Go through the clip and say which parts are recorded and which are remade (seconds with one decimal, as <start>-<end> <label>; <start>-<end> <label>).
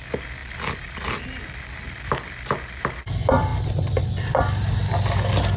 0.0-5.6 recorded